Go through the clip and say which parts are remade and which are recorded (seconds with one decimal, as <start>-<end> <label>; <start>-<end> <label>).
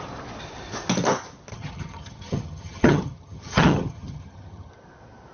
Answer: 0.0-1.5 recorded; 1.5-4.7 remade; 4.7-5.3 recorded